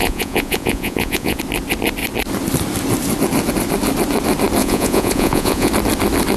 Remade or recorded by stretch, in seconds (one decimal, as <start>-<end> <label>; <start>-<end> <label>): 0.0-1.4 remade; 1.4-4.6 recorded; 4.6-5.7 remade; 5.7-6.4 recorded